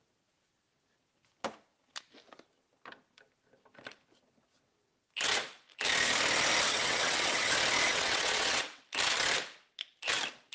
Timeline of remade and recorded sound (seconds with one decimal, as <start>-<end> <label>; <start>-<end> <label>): 0.0-6.7 recorded; 6.7-7.5 remade; 7.5-7.9 recorded; 7.9-8.8 remade; 8.8-10.5 recorded